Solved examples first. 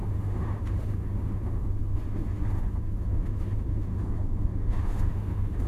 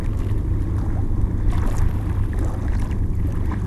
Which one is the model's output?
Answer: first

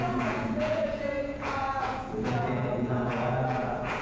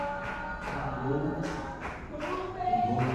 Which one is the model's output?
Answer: first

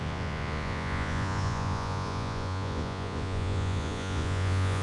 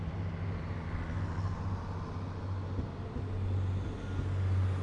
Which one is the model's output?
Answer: first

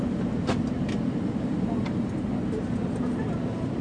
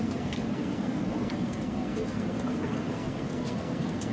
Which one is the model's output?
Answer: second